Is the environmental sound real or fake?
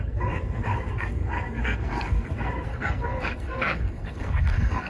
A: fake